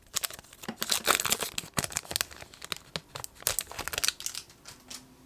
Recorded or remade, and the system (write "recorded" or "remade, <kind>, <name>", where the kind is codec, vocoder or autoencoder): recorded